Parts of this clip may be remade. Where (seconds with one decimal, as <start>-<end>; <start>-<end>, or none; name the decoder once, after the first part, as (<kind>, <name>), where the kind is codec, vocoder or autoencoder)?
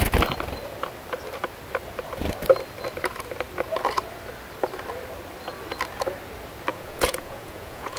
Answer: 6.7-8.0 (vocoder, Vocos)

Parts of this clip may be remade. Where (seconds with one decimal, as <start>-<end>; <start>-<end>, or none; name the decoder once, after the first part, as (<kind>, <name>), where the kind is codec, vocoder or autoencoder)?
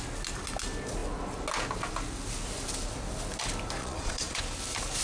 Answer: 3.8-4.4 (vocoder, Vocos)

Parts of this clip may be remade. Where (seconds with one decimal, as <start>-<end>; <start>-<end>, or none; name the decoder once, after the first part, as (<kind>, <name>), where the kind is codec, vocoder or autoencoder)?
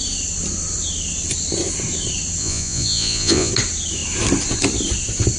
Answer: 2.4-3.5 (vocoder, Vocos)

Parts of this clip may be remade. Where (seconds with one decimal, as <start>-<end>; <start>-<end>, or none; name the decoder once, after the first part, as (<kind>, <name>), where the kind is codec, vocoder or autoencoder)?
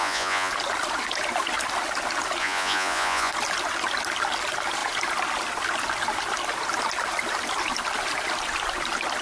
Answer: 0.0-0.5 (vocoder, Vocos); 2.4-3.3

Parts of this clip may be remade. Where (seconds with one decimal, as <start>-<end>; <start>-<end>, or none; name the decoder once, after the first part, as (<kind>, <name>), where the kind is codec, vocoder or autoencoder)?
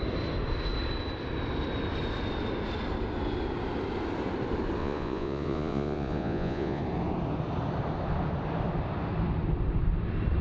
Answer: 4.8-6.8 (vocoder, Vocos)